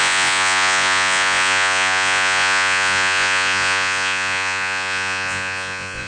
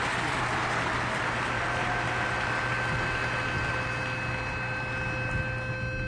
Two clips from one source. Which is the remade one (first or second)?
first